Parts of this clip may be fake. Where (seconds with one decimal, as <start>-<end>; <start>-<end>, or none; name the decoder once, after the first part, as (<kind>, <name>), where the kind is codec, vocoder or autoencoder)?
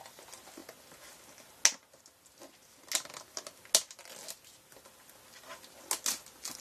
none